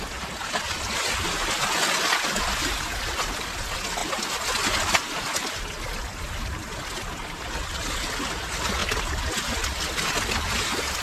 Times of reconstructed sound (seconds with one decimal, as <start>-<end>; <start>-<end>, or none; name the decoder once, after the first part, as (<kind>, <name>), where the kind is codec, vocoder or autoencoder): none

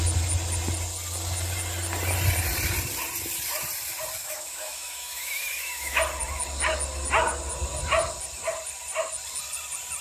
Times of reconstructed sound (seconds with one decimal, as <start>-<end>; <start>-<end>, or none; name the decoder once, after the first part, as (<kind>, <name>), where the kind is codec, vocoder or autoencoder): 4.2-6.0 (autoencoder, DAC-VAE)

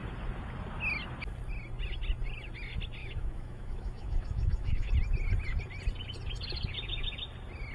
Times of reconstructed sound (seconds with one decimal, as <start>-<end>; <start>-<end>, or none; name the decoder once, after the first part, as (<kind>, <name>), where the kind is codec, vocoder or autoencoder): 3.0-4.9 (autoencoder, DAC-VAE)

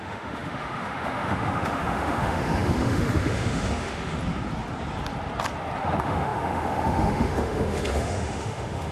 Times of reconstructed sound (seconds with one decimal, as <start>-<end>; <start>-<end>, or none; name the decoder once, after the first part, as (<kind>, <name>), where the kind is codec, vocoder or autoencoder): 0.0-4.2 (autoencoder, DAC-VAE); 5.8-8.9

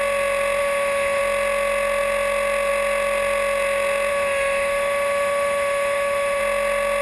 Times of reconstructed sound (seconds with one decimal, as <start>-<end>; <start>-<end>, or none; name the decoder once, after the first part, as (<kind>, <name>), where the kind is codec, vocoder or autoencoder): 0.6-1.2 (autoencoder, DAC-VAE); 4.1-6.4